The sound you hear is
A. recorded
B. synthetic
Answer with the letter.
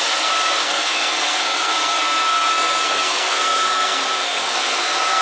B